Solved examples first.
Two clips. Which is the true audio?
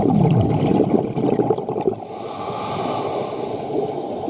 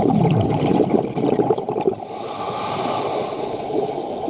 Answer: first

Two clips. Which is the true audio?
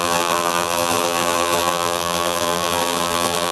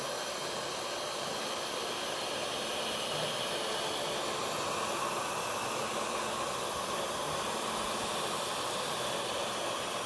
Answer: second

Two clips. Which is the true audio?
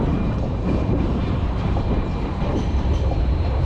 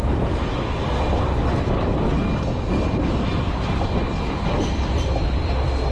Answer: second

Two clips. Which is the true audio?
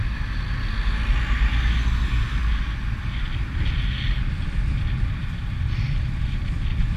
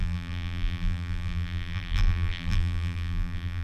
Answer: first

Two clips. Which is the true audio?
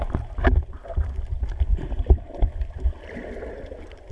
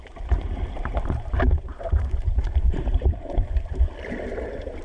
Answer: first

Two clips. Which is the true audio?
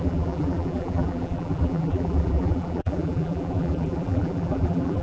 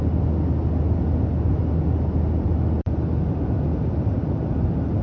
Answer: second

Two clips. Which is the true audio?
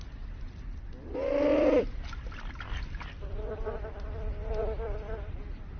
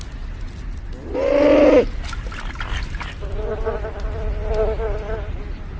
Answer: second